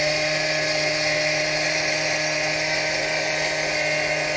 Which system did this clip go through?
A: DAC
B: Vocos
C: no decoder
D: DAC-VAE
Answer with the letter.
C